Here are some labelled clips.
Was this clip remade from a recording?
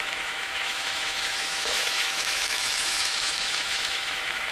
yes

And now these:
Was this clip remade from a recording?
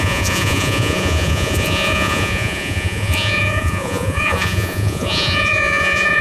yes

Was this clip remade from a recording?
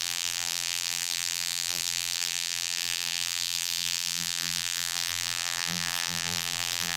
yes